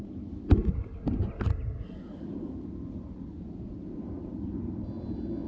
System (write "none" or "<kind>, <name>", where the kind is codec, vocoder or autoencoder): none